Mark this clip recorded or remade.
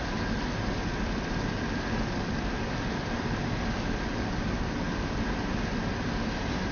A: recorded